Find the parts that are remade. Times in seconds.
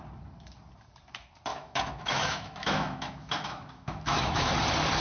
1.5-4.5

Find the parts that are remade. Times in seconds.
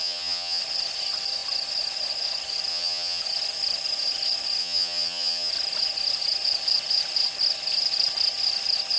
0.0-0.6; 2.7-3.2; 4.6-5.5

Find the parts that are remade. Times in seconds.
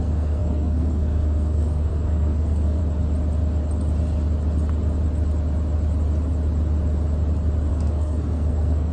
0.0-2.8; 7.7-8.9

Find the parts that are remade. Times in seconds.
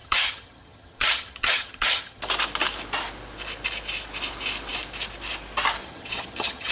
0.0-2.2; 5.8-6.7